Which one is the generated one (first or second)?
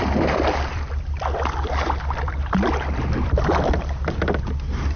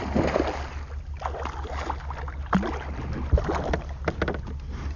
first